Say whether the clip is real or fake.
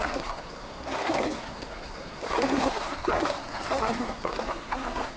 fake